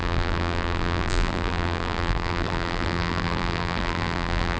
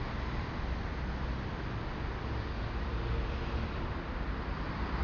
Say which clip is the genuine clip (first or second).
second